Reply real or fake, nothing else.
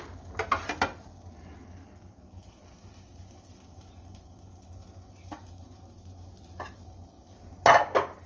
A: real